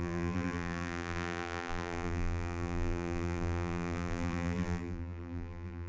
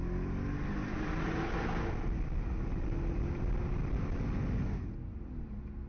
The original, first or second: second